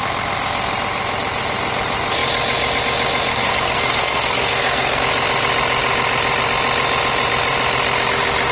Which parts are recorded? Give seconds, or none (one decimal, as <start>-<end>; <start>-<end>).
0.0-3.3; 5.0-8.5